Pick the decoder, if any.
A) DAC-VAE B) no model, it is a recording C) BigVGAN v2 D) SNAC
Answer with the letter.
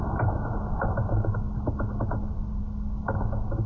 B